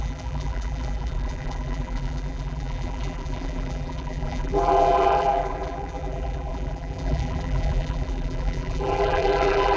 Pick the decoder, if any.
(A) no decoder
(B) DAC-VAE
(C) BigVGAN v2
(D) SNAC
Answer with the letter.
C